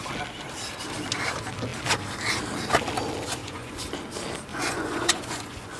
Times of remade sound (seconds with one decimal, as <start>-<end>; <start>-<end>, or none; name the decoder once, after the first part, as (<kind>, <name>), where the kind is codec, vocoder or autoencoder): 3.4-3.9 (vocoder, Vocos); 4.5-5.8